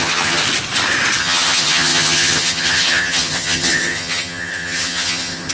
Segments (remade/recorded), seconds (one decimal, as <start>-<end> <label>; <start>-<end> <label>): 0.0-0.4 remade; 0.4-1.2 recorded; 1.2-5.5 remade